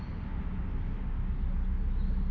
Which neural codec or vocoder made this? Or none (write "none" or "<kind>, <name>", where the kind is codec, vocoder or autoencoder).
none